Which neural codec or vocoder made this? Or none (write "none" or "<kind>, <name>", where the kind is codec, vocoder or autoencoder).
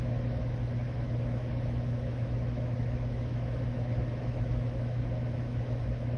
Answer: autoencoder, DAC-VAE